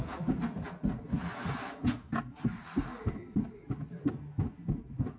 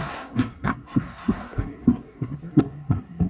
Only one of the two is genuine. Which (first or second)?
first